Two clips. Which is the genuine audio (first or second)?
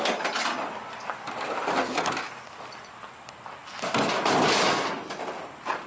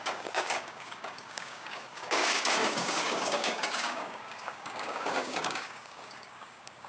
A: first